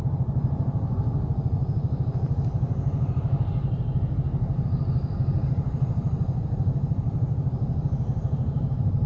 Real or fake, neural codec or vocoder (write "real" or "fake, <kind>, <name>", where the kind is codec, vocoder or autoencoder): real